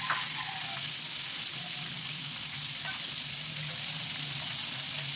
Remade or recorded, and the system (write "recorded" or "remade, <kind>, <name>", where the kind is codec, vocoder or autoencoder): recorded